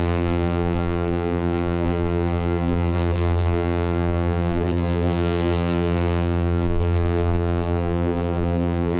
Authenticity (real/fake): fake